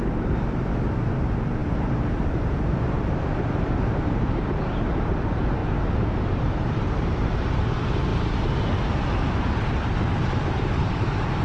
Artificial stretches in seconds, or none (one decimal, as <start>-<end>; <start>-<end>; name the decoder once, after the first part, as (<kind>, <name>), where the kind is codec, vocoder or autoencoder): 0.0-5.6 (vocoder, BigVGAN v2); 6.3-8.1; 8.8-11.4